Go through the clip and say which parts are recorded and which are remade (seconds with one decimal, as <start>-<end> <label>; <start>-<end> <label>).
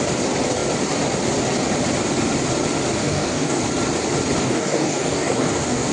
0.0-3.0 recorded; 3.0-3.6 remade; 3.6-4.4 recorded; 4.4-5.9 remade